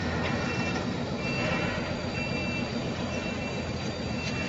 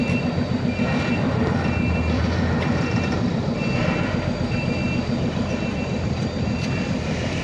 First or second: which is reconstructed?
second